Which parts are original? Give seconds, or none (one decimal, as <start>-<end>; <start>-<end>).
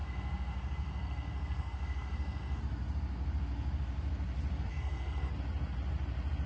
2.6-4.7; 5.3-6.5